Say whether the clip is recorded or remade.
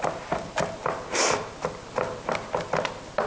recorded